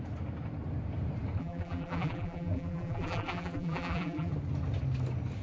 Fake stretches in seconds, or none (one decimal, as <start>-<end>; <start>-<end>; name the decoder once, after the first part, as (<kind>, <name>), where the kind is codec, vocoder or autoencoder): 1.4-4.3 (vocoder, BigVGAN v2)